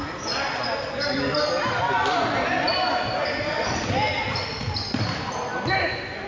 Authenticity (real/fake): real